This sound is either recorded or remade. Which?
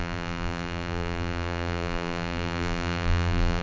remade